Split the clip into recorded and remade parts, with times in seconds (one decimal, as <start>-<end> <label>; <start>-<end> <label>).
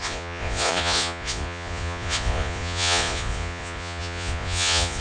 0.0-5.0 remade